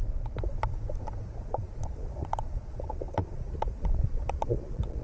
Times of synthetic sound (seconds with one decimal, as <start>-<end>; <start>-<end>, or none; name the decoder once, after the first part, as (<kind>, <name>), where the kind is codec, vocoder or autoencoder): 1.4-5.0 (vocoder, Vocos)